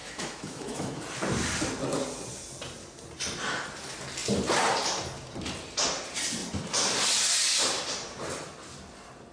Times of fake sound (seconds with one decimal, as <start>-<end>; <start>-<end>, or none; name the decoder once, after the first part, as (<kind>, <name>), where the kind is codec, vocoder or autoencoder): 0.0-1.0 (autoencoder, DAC-VAE)